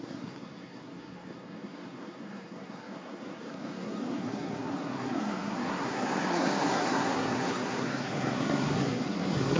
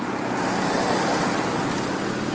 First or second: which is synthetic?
first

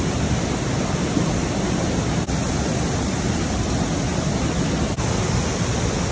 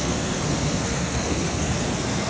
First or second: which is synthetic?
second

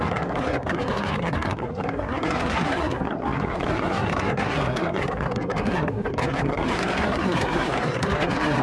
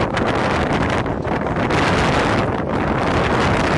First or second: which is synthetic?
first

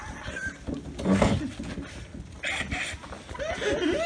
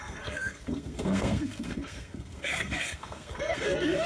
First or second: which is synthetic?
second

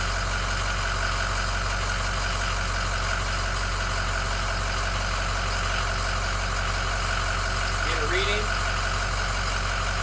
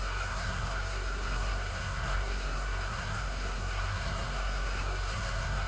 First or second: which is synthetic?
second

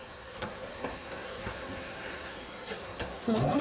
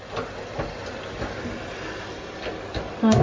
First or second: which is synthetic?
first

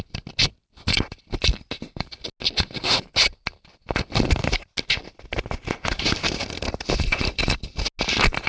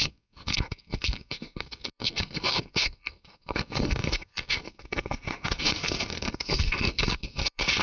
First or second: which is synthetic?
second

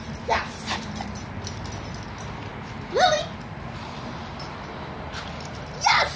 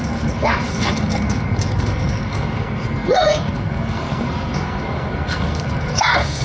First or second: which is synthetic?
second